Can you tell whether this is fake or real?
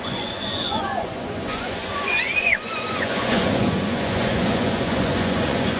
fake